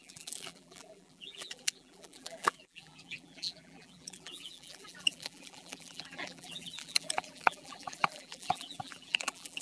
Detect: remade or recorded remade